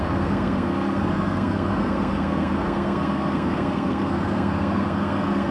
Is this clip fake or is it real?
fake